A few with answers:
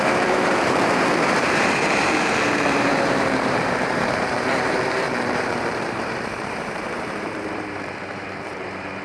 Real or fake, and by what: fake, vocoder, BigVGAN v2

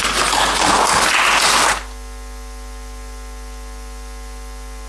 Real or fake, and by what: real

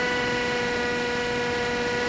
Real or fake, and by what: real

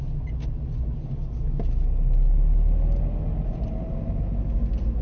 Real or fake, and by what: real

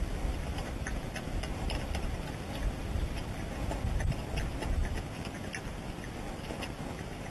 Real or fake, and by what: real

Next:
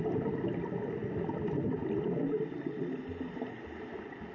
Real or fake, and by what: real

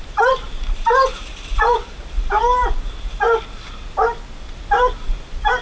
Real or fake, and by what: real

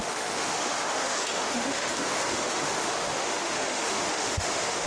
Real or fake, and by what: fake, autoencoder, DAC-VAE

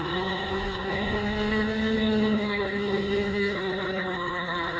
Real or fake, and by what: fake, codec, SNAC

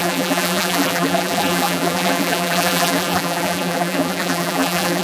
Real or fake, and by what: fake, vocoder, BigVGAN v2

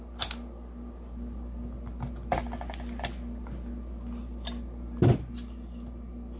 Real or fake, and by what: real